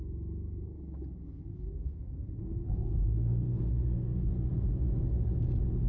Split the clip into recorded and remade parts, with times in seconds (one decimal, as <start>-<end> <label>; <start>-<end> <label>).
0.0-1.5 recorded; 1.5-4.3 remade; 4.3-5.9 recorded

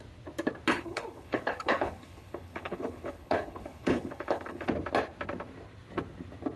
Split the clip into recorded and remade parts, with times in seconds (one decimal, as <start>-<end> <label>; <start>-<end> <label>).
0.0-0.7 recorded; 0.7-4.7 remade; 4.7-6.6 recorded

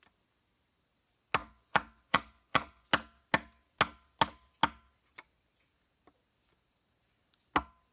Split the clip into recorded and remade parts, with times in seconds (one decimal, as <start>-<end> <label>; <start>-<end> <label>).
0.0-1.4 recorded; 1.4-2.9 remade; 2.9-7.9 recorded